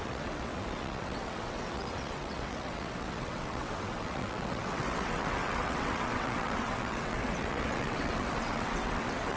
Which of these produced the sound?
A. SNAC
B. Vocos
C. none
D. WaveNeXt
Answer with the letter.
D